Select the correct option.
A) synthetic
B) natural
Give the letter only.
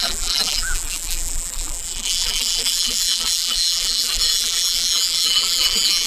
A